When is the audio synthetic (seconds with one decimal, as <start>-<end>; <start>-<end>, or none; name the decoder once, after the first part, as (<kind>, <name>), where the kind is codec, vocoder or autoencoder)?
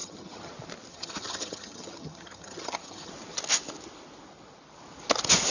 0.0-0.5 (vocoder, HiFi-GAN); 0.9-3.1